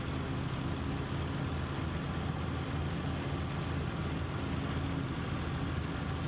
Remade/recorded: recorded